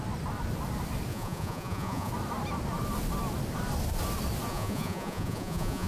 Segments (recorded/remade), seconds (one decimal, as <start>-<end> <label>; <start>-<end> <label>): 0.0-1.1 recorded; 1.1-2.1 remade; 2.1-4.5 recorded; 4.5-5.9 remade